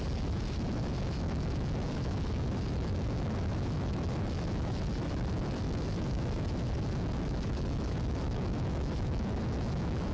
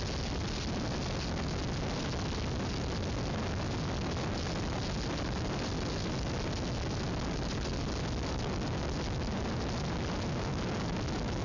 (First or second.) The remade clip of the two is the first